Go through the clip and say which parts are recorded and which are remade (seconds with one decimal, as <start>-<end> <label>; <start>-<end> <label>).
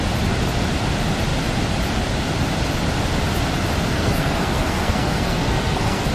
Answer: 0.0-3.9 recorded; 3.9-6.1 remade